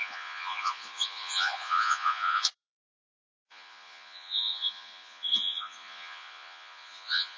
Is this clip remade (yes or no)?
yes